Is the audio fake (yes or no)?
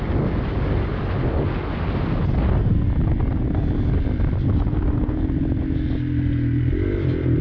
no